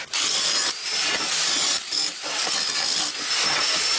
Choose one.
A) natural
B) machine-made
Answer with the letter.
A